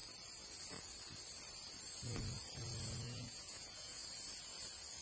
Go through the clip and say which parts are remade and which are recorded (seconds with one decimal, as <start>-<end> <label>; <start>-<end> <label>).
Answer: 0.0-3.0 recorded; 3.0-4.0 remade; 4.0-5.0 recorded